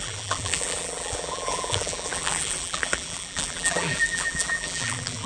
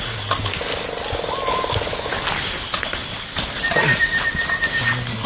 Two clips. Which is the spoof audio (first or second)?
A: first